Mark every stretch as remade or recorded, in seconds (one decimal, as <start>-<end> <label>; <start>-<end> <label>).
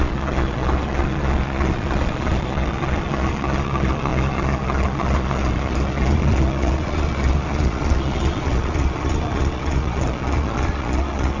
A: 0.0-11.4 remade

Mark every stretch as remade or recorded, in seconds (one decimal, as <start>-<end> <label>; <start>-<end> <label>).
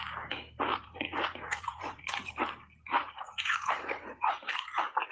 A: 0.0-0.7 recorded; 0.7-2.3 remade; 2.3-3.0 recorded; 3.0-4.5 remade; 4.5-5.1 recorded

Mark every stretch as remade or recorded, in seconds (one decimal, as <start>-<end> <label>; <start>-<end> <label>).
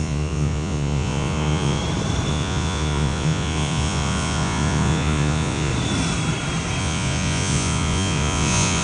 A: 0.0-1.8 remade; 1.8-2.3 recorded; 2.3-5.7 remade; 5.7-6.8 recorded; 6.8-8.8 remade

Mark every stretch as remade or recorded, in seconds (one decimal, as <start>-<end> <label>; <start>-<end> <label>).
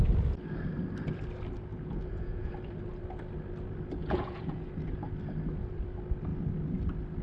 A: 0.0-1.7 recorded; 1.7-2.5 remade; 2.5-4.0 recorded; 4.0-4.7 remade; 4.7-7.2 recorded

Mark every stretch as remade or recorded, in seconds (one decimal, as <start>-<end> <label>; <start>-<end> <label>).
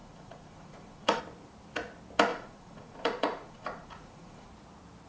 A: 0.0-1.2 remade; 1.2-2.3 recorded; 2.3-4.5 remade; 4.5-5.1 recorded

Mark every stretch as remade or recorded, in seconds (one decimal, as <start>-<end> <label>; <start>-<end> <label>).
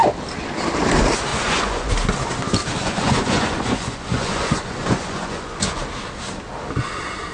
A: 0.0-1.3 recorded; 1.3-1.9 remade; 1.9-2.8 recorded; 2.8-5.8 remade; 5.8-7.3 recorded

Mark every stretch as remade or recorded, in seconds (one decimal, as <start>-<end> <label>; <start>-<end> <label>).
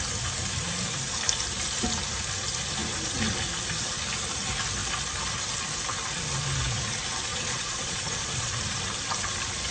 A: 0.0-7.3 recorded; 7.3-8.8 remade; 8.8-9.7 recorded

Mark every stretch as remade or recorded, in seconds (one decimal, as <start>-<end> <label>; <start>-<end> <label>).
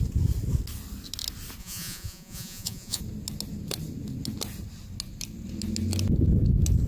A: 0.0-1.6 recorded; 1.6-3.0 remade; 3.0-6.9 recorded